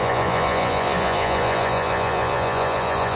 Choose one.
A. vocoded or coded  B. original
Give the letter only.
A